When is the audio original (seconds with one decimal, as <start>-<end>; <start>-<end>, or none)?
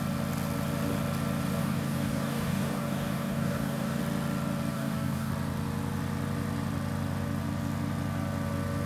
0.0-1.6; 4.0-4.7; 5.3-8.9